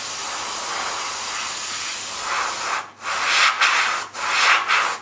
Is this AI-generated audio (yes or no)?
no